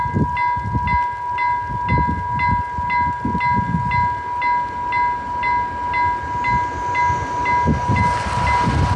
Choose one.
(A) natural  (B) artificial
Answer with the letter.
A